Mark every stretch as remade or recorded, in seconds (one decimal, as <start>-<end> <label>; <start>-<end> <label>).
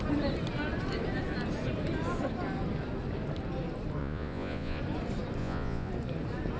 0.0-4.0 recorded; 4.0-4.8 remade; 4.8-5.4 recorded; 5.4-5.9 remade; 5.9-6.6 recorded